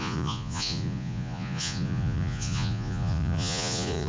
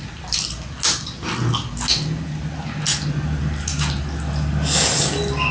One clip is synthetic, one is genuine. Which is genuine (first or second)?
second